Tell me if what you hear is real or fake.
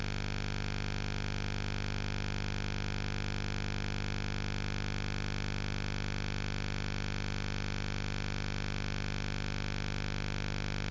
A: real